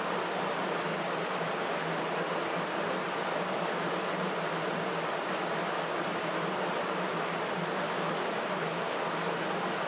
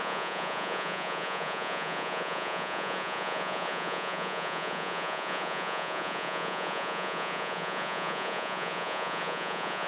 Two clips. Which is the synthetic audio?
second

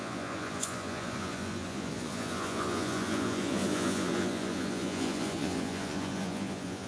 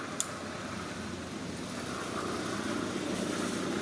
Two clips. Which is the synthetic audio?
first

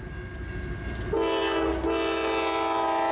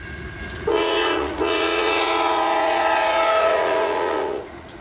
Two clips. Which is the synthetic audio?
second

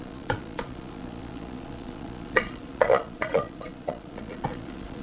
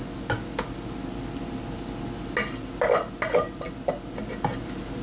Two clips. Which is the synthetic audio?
first